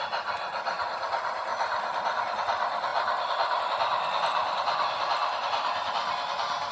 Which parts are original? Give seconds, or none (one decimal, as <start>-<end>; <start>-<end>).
0.0-1.5; 2.2-2.9; 3.6-4.4; 5.9-6.7